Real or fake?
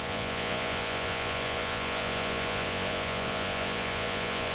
fake